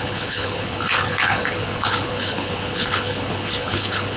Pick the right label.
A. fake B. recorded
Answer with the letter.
A